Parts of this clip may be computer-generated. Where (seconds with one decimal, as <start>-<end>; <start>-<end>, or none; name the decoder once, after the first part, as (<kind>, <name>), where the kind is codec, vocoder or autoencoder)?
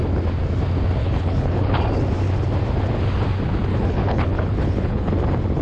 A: 1.0-1.8 (codec, HILCodec); 3.7-5.1